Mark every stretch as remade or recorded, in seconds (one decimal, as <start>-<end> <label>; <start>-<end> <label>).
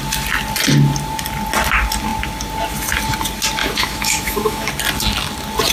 0.0-3.6 recorded; 3.6-4.7 remade; 4.7-5.7 recorded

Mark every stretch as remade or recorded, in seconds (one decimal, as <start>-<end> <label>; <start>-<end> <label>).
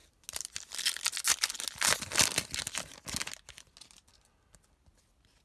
0.0-5.4 recorded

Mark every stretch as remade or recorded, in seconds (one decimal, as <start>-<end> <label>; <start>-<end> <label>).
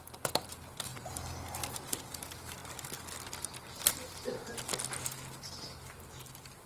0.0-6.7 recorded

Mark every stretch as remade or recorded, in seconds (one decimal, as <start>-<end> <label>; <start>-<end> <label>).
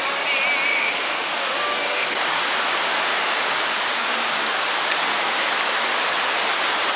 0.0-0.7 recorded; 0.7-2.5 remade; 2.5-3.1 recorded; 3.1-5.5 remade; 5.5-7.0 recorded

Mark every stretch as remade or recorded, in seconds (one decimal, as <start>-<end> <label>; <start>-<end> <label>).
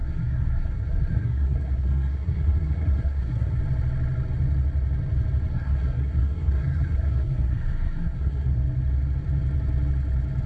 0.0-3.6 remade; 3.6-5.5 recorded; 5.5-8.6 remade; 8.6-10.5 recorded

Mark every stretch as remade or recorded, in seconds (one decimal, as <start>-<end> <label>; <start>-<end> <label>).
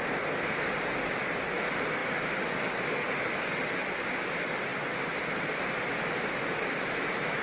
0.0-7.4 recorded